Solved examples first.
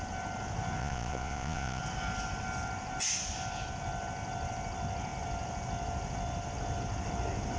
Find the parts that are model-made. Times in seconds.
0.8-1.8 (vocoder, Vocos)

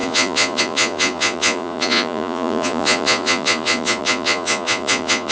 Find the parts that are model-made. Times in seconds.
0.0-5.3 (vocoder, Vocos)